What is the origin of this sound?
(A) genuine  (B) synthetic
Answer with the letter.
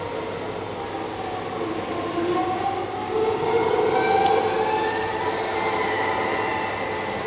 A